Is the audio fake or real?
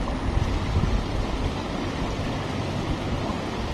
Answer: real